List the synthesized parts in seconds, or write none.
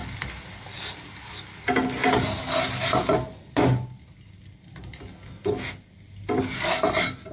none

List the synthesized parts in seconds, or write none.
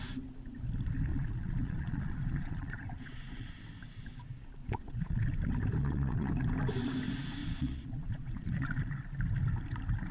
1.1-3.5 (vocoder, Vocos); 4.6-5.3; 5.8-6.3; 7.4-8.8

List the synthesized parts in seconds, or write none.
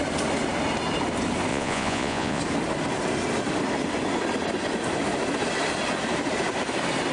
1.5-2.4 (vocoder, Vocos)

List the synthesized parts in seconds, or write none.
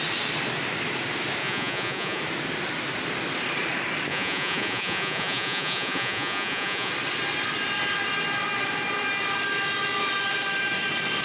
1.4-2.2 (vocoder, Vocos); 4.1-6.9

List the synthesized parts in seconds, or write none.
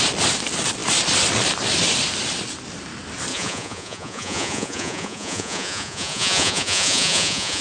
3.3-7.6 (vocoder, Vocos)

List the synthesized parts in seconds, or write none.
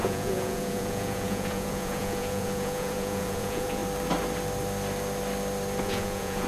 0.0-3.8 (vocoder, Vocos); 5.8-6.5